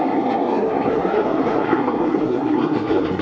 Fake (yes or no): yes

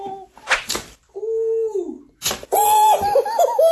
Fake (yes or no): no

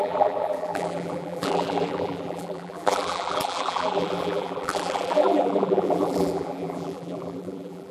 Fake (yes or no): yes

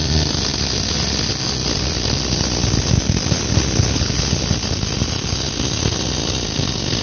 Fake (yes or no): no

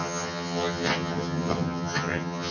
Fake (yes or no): yes